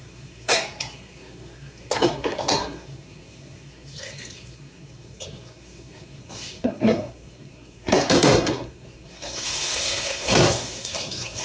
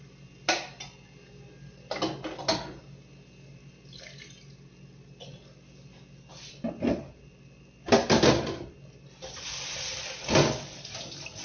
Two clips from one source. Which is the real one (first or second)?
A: second